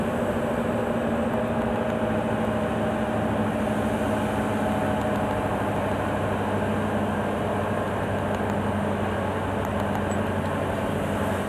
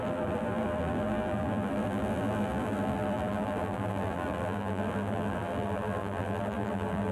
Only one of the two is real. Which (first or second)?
first